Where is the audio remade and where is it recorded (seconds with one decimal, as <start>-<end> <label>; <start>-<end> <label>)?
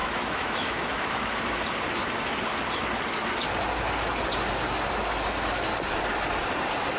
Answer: 0.0-1.4 remade; 1.4-7.0 recorded